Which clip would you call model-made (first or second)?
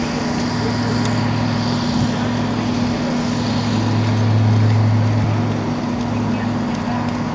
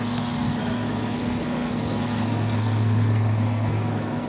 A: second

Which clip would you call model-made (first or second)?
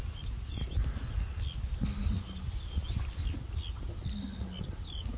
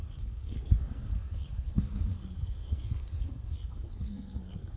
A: second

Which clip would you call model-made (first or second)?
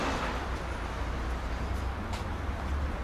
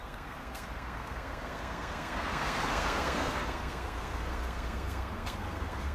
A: second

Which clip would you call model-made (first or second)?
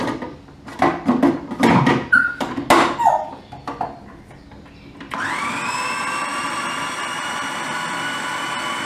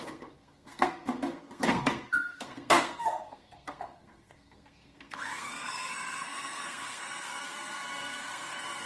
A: second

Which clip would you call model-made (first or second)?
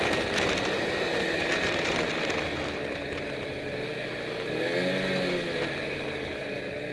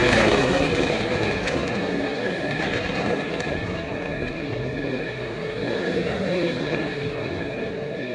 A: second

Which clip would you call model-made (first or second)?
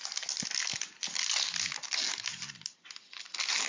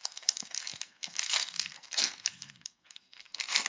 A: second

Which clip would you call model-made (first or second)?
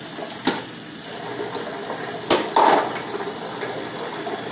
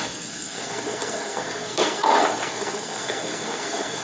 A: second